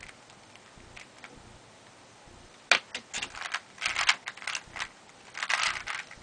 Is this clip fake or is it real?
real